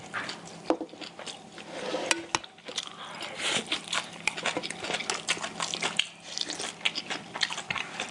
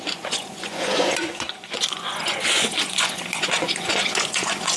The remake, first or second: second